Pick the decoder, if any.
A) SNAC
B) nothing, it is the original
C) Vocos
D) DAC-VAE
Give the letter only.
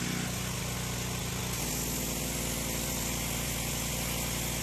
B